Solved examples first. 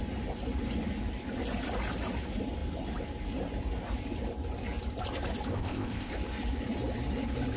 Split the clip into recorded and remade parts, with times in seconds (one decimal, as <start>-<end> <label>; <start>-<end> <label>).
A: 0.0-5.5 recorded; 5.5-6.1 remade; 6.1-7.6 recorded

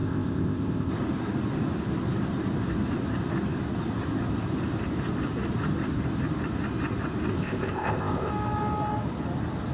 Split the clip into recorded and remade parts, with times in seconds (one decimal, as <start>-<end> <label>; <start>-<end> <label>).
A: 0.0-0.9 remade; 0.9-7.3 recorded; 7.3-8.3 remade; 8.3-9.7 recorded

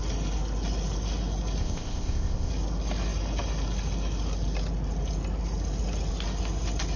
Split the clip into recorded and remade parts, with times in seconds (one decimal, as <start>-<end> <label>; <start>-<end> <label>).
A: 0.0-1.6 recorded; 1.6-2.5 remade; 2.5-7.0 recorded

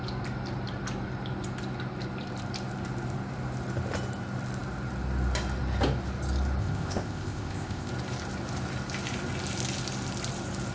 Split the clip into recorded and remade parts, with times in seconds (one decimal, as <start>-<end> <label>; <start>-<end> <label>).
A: 0.0-6.6 recorded; 6.6-7.9 remade; 7.9-10.7 recorded

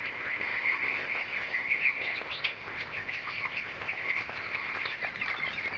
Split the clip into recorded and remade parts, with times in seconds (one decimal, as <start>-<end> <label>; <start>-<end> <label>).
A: 0.0-5.0 remade; 5.0-5.8 recorded

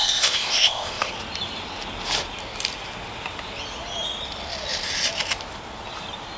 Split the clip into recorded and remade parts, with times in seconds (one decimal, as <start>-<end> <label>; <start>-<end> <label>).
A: 0.0-1.1 remade; 1.1-6.4 recorded

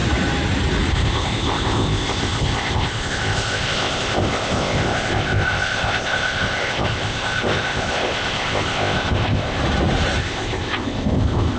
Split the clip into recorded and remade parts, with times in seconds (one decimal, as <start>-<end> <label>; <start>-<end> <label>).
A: 0.0-0.9 recorded; 0.9-9.6 remade; 9.6-10.2 recorded; 10.2-11.6 remade

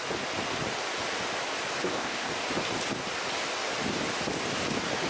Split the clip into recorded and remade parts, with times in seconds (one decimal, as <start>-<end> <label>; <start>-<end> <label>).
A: 0.0-1.8 recorded; 1.8-2.3 remade; 2.3-5.1 recorded